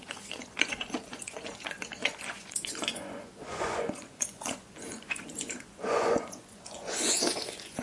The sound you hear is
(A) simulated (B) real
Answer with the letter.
A